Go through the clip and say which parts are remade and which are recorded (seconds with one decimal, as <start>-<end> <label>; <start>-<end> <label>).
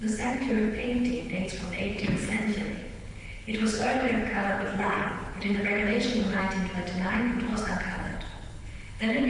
0.0-6.4 remade; 6.4-7.0 recorded; 7.0-9.3 remade